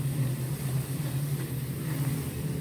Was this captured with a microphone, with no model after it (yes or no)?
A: yes